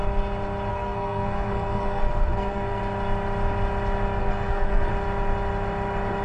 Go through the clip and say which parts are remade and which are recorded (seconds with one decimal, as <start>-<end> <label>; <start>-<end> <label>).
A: 0.0-0.7 recorded; 0.7-2.8 remade; 2.8-4.2 recorded; 4.2-4.9 remade; 4.9-6.2 recorded